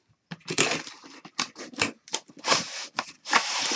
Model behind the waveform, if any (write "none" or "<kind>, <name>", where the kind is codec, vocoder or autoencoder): none